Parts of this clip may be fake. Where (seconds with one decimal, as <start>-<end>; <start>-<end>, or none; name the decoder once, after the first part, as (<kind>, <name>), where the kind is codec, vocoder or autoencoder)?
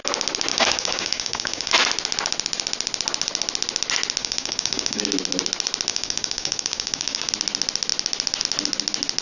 0.5-1.7 (codec, DAC); 4.2-5.0; 5.9-7.3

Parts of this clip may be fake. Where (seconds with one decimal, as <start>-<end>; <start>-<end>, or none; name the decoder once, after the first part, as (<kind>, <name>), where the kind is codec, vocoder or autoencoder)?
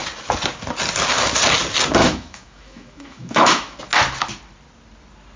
2.0-3.8 (autoencoder, DAC-VAE)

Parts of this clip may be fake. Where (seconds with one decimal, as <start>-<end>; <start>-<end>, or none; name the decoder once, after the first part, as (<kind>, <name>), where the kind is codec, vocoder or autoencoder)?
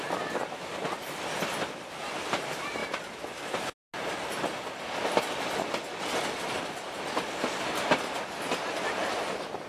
none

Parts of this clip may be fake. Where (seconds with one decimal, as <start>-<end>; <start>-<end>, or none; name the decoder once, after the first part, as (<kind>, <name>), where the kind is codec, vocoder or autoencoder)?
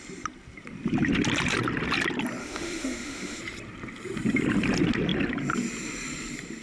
2.4-3.4 (autoencoder, DAC-VAE)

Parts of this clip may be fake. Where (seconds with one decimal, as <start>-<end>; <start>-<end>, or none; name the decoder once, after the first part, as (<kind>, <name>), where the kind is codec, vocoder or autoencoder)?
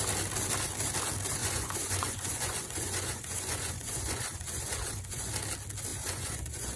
1.4-5.3 (vocoder, Vocos); 5.9-6.8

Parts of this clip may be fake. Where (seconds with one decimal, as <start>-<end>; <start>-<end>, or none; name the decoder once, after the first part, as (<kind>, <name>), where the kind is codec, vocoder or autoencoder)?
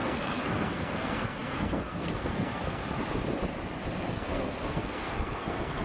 0.0-2.8 (codec, SNAC); 4.1-5.8